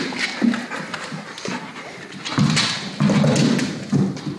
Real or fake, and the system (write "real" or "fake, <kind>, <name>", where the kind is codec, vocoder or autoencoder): real